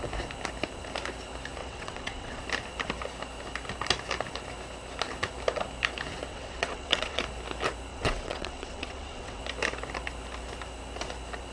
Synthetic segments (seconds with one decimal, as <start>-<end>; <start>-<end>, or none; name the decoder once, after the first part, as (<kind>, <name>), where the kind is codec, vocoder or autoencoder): 1.6-2.4 (vocoder, WaveNeXt); 6.3-7.2; 7.9-9.4

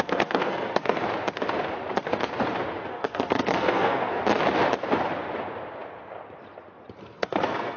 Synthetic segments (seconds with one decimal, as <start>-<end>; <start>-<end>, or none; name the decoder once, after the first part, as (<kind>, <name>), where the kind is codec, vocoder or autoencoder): 0.0-1.0 (codec, SNAC); 2.9-4.2; 7.0-7.8

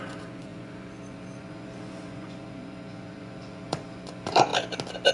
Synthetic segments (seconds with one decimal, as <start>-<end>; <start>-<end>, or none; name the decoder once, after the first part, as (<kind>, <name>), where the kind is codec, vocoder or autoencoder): 0.0-4.5 (vocoder, Vocos)

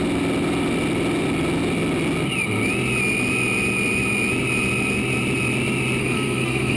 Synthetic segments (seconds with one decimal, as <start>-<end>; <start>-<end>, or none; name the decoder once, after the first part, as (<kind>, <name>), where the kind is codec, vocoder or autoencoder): 6.0-6.8 (codec, SNAC)

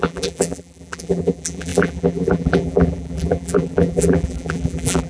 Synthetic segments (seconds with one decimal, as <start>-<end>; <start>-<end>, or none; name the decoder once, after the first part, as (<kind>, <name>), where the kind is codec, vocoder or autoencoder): 0.0-5.1 (vocoder, BigVGAN v2)

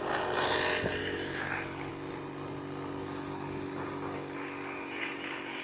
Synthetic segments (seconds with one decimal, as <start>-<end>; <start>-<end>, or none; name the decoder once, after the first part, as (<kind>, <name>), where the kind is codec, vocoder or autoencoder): 1.0-1.9 (codec, DAC); 3.0-5.6